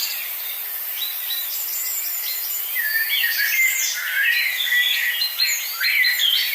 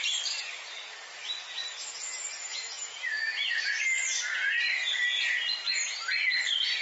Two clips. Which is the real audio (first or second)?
second